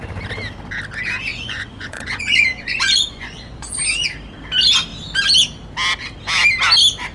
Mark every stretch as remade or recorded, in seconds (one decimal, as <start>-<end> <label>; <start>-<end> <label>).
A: 0.0-1.3 recorded; 1.3-3.8 remade; 3.8-7.1 recorded